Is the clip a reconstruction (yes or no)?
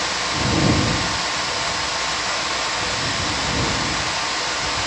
no